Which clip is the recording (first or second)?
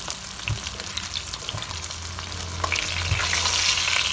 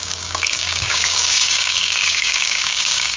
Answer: first